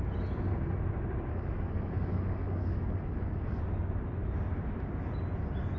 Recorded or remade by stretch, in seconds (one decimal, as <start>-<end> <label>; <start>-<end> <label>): 0.0-1.3 recorded; 1.3-3.6 remade; 3.6-5.8 recorded